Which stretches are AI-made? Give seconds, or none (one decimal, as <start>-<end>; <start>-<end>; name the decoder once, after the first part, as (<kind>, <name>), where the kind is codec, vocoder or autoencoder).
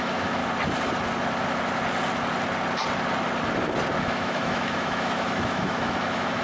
0.0-0.4 (autoencoder, DAC-VAE); 4.0-6.4